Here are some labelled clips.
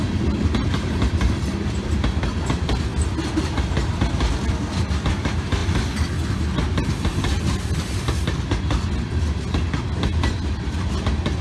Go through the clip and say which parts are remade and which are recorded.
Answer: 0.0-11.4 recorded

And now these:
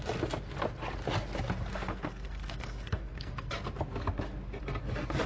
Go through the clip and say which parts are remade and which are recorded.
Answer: 0.0-1.7 recorded; 1.7-3.5 remade; 3.5-5.3 recorded

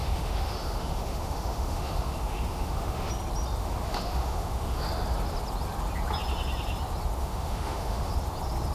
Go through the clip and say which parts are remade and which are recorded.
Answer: 0.0-3.1 remade; 3.1-3.6 recorded; 3.6-4.8 remade; 4.8-7.2 recorded; 7.2-8.1 remade; 8.1-8.7 recorded

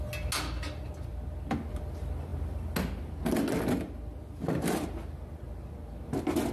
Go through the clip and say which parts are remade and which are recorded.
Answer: 0.0-6.5 recorded

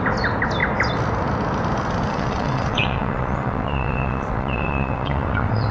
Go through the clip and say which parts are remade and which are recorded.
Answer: 0.0-2.1 recorded; 2.1-5.7 remade

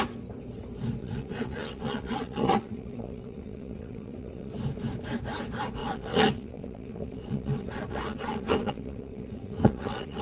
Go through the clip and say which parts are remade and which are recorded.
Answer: 0.0-1.0 recorded; 1.0-4.5 remade; 4.5-5.8 recorded; 5.8-10.2 remade